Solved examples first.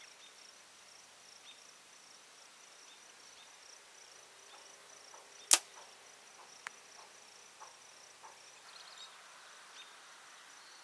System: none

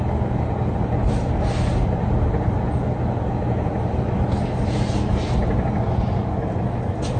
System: none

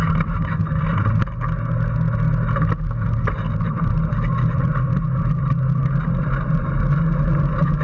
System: none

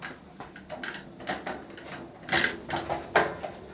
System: none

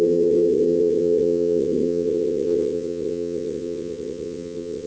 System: vocoder, WaveNeXt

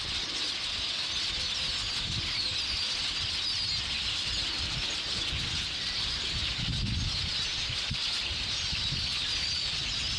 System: none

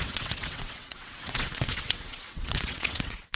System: vocoder, WaveNeXt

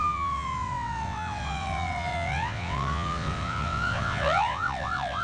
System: vocoder, WaveNeXt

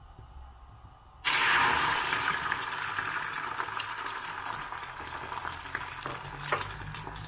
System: none